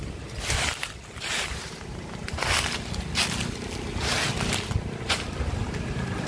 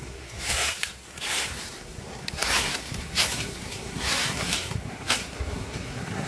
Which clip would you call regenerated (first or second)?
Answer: second